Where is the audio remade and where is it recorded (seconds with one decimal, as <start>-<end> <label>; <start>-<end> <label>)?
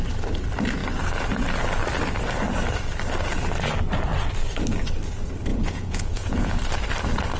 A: 0.0-5.5 recorded; 5.5-6.6 remade; 6.6-7.4 recorded